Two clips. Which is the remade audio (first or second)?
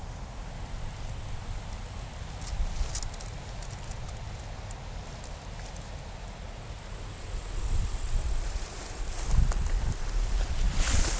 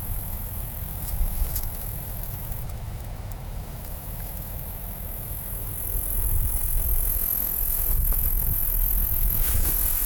second